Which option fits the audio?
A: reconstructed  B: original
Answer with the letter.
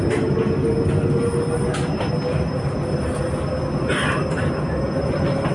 B